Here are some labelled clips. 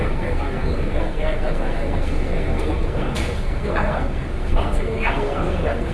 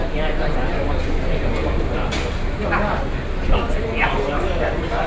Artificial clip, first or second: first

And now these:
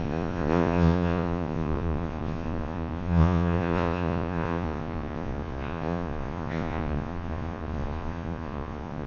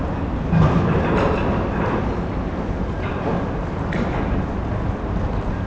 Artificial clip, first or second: first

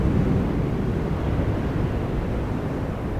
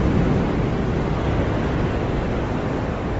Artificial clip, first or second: first